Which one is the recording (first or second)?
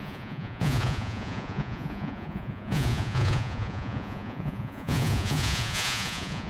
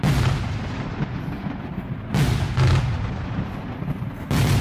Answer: second